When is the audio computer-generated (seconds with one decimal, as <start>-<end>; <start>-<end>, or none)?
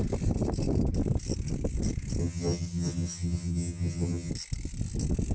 2.2-4.3